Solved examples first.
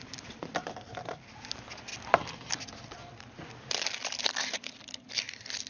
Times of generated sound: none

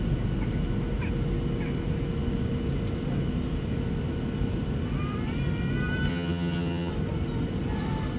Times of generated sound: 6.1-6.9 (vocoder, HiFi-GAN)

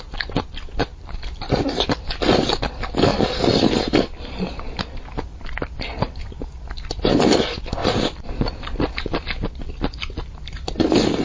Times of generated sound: 0.9-1.5 (vocoder, BigVGAN v2)

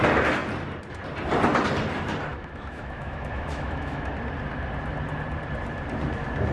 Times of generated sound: 2.3-4.1 (autoencoder, DAC-VAE)

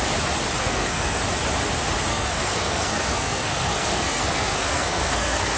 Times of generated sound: 0.6-1.2 (codec, SNAC); 2.1-5.6

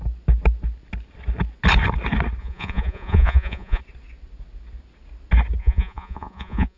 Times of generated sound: 2.4-3.8 (vocoder, Vocos); 5.6-6.8

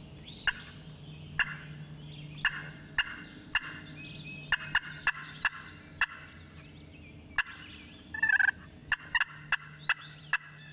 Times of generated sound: none

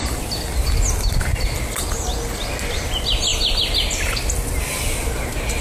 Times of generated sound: none